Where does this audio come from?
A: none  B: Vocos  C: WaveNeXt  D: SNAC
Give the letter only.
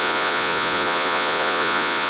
B